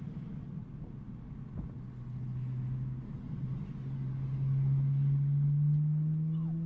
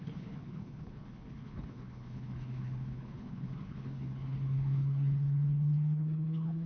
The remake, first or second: second